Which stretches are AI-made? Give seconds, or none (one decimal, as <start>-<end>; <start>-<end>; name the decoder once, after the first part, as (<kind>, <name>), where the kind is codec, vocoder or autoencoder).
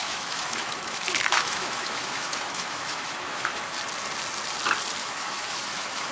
0.0-3.7 (autoencoder, DAC-VAE); 5.0-6.1